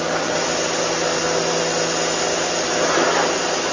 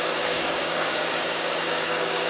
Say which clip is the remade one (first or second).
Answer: second